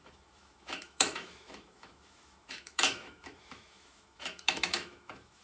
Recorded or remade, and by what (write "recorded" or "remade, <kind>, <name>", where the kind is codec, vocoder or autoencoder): remade, autoencoder, DAC-VAE